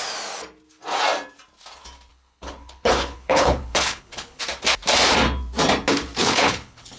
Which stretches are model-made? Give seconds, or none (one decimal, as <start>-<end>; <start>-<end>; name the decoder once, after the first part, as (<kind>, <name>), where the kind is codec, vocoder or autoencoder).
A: 2.1-4.4 (codec, HILCodec); 6.2-7.0